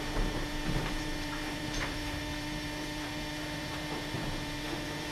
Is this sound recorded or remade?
remade